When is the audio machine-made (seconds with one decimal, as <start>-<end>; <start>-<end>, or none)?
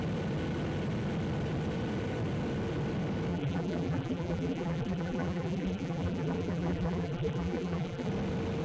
3.3-8.1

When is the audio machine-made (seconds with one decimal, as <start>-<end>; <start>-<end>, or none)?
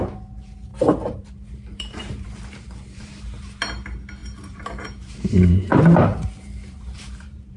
0.7-3.1; 4.2-7.6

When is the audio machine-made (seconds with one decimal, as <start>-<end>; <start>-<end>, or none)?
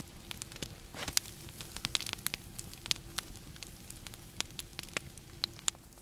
none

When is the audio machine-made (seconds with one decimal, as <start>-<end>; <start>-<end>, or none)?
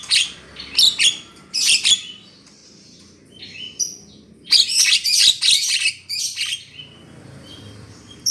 0.0-2.6; 5.4-8.3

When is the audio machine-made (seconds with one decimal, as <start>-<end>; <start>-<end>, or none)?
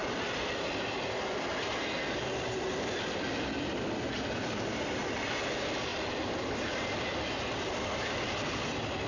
5.9-6.4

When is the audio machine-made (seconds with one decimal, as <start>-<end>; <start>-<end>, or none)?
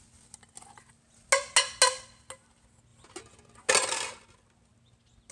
none